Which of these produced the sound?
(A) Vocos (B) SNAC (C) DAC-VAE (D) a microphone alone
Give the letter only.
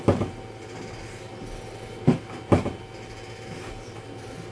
D